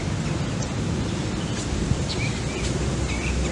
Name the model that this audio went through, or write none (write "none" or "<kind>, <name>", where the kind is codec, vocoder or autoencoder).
none